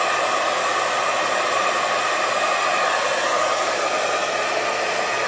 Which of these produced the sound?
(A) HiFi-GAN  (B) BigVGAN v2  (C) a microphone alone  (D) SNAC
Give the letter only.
C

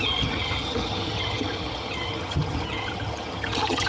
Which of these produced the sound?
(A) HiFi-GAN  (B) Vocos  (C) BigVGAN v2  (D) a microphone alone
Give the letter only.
A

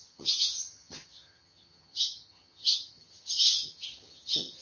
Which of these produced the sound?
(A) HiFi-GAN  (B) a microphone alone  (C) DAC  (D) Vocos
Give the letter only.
A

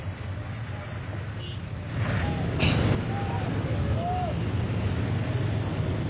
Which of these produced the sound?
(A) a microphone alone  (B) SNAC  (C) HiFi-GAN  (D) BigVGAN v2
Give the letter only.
A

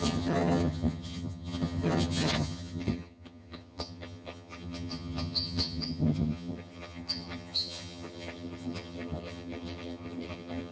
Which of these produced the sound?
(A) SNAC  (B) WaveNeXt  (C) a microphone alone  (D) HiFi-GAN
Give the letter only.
D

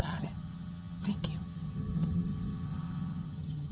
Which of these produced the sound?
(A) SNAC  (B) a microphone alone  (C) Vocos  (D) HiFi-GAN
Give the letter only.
D